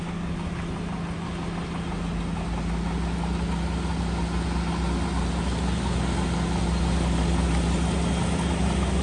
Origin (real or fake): real